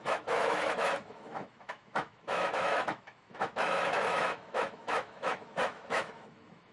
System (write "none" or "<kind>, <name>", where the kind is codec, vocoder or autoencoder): autoencoder, DAC-VAE